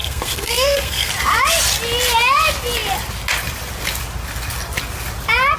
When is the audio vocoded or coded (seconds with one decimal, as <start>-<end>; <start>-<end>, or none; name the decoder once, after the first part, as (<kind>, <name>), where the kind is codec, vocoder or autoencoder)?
0.0-1.1 (codec, SNAC)